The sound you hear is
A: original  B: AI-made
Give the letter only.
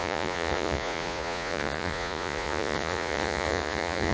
B